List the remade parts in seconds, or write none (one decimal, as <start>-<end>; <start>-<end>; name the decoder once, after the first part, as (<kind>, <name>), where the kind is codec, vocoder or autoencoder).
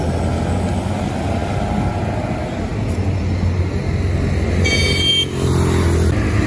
none